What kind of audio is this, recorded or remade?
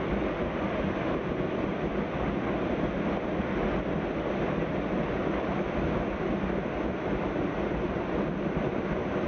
recorded